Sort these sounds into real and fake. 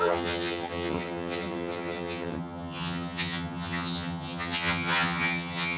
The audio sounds fake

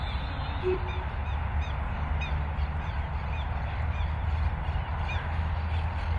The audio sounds real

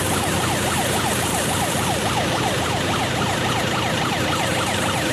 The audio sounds real